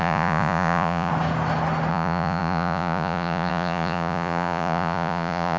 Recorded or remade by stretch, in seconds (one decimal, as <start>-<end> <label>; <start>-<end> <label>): 0.0-1.1 remade; 1.1-1.9 recorded; 1.9-5.6 remade

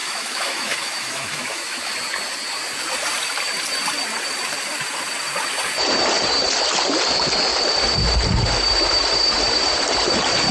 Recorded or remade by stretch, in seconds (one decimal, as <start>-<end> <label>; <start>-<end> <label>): 0.0-1.9 remade; 1.9-10.5 recorded

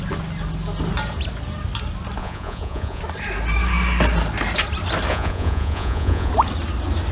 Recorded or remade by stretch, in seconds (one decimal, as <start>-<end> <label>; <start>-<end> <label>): 0.0-2.2 recorded; 2.2-3.0 remade; 3.0-5.1 recorded; 5.1-6.3 remade; 6.3-7.1 recorded

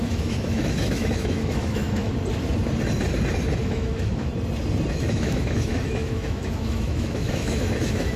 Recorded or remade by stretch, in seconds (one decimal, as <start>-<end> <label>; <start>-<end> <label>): 0.0-2.1 remade; 2.1-3.6 recorded; 3.6-4.3 remade; 4.3-4.9 recorded; 4.9-8.2 remade

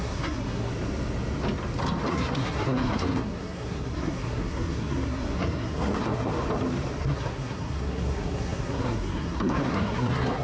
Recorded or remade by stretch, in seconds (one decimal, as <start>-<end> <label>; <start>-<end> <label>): 0.0-0.7 remade; 0.7-2.1 recorded; 2.1-6.3 remade; 6.3-7.0 recorded; 7.0-10.4 remade